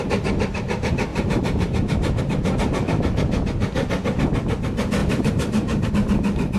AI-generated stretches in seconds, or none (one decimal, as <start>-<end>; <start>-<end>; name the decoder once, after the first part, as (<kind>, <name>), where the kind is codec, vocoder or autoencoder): 1.1-2.2 (vocoder, BigVGAN v2); 5.0-5.9

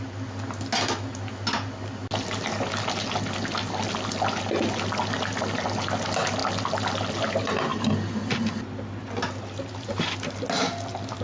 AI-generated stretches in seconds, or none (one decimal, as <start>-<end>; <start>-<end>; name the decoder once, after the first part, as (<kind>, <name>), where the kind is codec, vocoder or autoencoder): 6.4-7.1 (vocoder, BigVGAN v2)

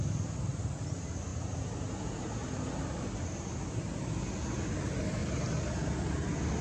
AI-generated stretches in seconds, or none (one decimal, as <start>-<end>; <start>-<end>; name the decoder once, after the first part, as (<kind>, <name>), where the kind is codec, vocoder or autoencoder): 1.3-4.1 (vocoder, BigVGAN v2)

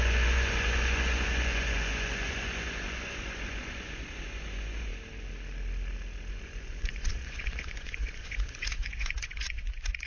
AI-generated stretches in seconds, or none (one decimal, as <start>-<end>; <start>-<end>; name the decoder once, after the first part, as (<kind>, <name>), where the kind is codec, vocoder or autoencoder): 0.0-4.9 (vocoder, Vocos); 6.3-10.1

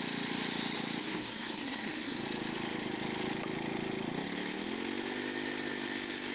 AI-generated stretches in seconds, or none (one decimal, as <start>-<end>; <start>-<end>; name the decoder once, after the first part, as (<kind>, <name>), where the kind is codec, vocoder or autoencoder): 1.0-2.2 (codec, SNAC)